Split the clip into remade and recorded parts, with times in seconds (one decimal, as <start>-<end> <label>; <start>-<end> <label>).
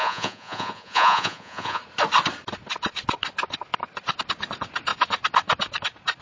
0.0-1.8 remade; 1.8-6.2 recorded